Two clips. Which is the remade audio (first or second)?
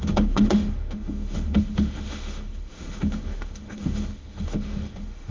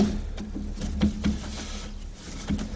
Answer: first